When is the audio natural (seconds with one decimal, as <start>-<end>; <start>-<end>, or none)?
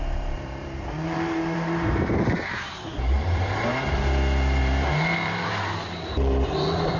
3.7-4.6